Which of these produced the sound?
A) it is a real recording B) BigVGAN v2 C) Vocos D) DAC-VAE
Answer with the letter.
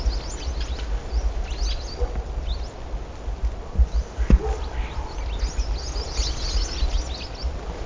A